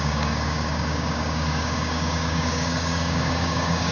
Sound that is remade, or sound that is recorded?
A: remade